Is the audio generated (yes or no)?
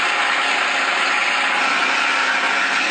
no